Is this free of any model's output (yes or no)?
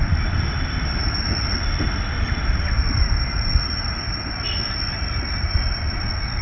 yes